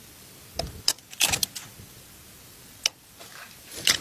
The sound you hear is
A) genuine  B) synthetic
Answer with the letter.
A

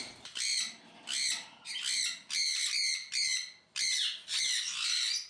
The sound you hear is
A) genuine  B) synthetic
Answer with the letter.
B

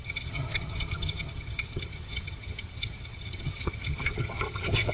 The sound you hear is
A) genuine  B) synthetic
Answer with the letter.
B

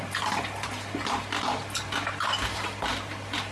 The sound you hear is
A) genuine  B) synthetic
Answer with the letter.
A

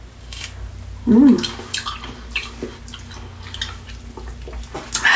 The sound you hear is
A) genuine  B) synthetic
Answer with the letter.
A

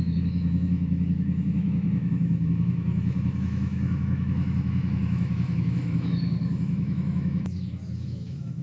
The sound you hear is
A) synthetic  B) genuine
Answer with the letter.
A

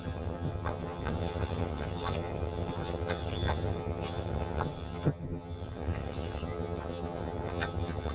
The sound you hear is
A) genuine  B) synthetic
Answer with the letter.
B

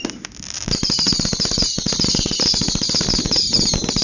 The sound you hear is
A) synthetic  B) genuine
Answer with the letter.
B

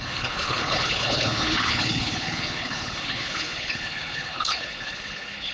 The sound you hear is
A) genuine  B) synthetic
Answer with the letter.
B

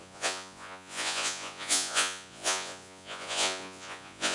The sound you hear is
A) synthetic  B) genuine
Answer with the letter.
A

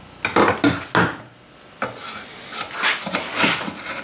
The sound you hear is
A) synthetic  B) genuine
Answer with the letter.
B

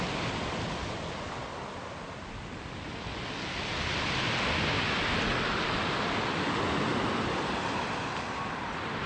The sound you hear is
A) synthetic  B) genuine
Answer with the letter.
B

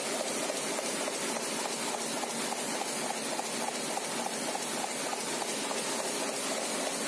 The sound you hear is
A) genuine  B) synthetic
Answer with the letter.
A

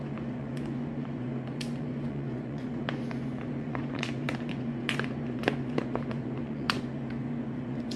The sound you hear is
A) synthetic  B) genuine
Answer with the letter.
A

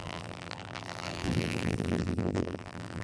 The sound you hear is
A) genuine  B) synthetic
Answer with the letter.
B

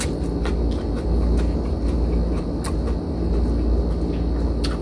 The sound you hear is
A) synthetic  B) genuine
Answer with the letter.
B